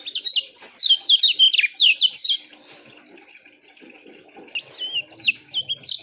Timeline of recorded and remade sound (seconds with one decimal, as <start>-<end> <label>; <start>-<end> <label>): 0.0-6.0 recorded

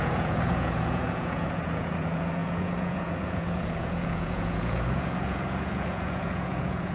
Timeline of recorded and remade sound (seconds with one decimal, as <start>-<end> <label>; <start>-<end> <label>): 0.0-6.9 remade

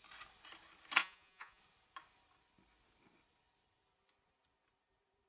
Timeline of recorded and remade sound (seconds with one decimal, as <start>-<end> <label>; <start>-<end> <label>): 0.0-1.0 recorded; 1.0-1.6 remade; 1.6-5.3 recorded

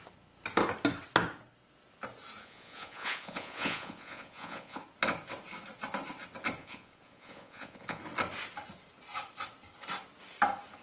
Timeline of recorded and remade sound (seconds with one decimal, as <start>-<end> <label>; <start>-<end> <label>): 0.0-2.4 recorded; 2.4-4.8 remade; 4.8-6.6 recorded; 6.6-8.0 remade; 8.0-10.8 recorded

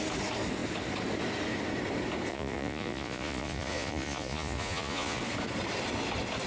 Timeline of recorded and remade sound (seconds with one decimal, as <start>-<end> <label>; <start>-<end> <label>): 0.0-2.3 recorded; 2.3-5.2 remade; 5.2-6.5 recorded

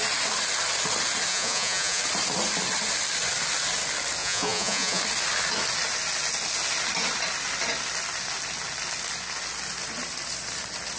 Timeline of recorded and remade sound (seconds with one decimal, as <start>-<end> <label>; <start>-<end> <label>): 0.0-1.3 recorded; 1.3-2.0 remade; 2.0-4.2 recorded; 4.2-5.0 remade; 5.0-11.0 recorded

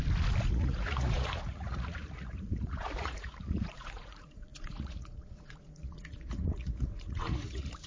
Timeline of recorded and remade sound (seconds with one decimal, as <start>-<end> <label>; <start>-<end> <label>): 0.0-0.5 recorded; 0.5-7.9 remade

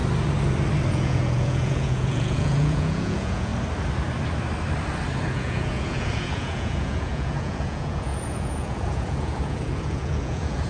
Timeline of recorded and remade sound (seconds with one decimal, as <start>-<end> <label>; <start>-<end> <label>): 0.0-0.9 recorded; 0.9-3.5 remade; 3.5-5.3 recorded; 5.3-10.7 remade